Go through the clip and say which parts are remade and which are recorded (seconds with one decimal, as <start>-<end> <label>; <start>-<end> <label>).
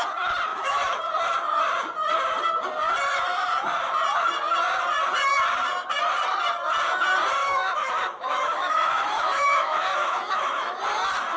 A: 0.0-0.5 recorded; 0.5-1.0 remade; 1.0-7.4 recorded; 7.4-10.8 remade; 10.8-11.4 recorded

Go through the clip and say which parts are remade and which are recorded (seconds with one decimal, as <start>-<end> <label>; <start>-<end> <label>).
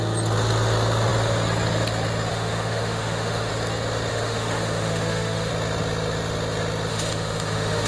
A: 0.0-2.3 recorded; 2.3-3.5 remade; 3.5-4.1 recorded; 4.1-5.5 remade; 5.5-6.9 recorded; 6.9-7.9 remade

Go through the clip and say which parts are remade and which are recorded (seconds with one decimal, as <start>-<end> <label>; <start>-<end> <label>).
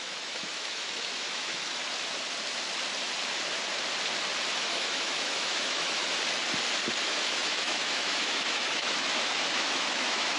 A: 0.0-1.8 remade; 1.8-4.6 recorded; 4.6-6.0 remade; 6.0-7.0 recorded; 7.0-10.4 remade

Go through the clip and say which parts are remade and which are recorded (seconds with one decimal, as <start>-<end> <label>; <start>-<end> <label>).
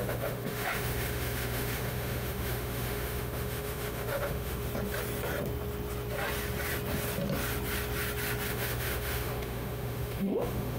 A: 0.0-4.7 remade; 4.7-8.5 recorded; 8.5-10.8 remade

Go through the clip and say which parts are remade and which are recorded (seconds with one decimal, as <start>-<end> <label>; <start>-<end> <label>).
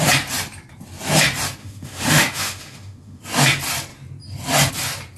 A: 0.0-1.6 recorded; 1.6-3.2 remade; 3.2-5.2 recorded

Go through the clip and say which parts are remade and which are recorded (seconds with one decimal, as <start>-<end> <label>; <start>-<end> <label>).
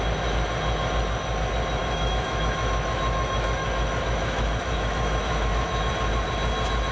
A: 0.0-1.8 recorded; 1.8-5.9 remade; 5.9-6.9 recorded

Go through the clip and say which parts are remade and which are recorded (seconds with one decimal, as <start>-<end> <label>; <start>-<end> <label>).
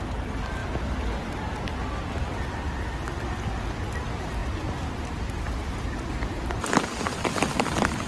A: 0.0-8.1 recorded